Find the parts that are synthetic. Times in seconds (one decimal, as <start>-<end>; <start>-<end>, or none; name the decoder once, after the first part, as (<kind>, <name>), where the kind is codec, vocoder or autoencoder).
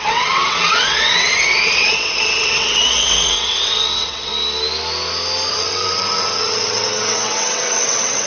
0.0-4.3 (vocoder, WaveNeXt); 5.5-8.3